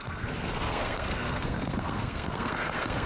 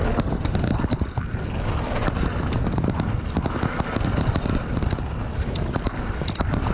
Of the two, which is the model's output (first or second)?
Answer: first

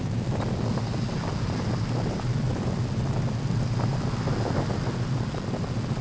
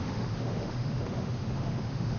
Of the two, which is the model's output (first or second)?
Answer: second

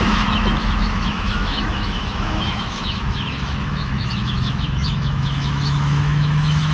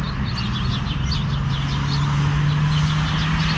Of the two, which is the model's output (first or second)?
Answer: first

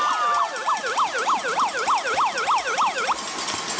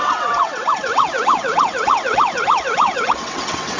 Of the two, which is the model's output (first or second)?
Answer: second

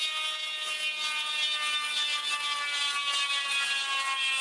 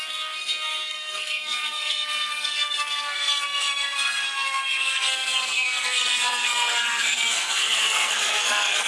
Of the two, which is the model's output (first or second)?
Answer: second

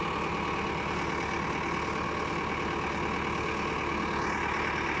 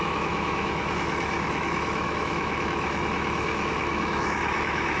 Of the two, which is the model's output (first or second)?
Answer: second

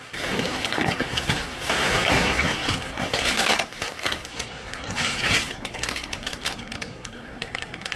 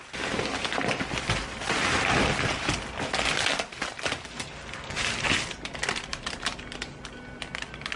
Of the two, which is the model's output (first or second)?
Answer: first